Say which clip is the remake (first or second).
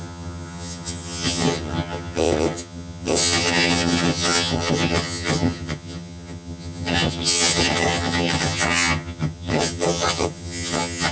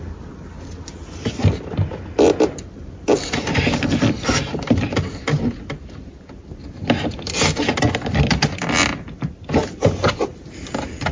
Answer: first